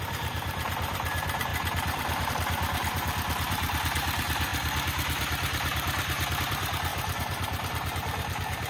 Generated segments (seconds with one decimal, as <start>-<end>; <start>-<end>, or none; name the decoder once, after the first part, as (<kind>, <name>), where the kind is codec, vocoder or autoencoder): 0.0-8.7 (vocoder, BigVGAN v2)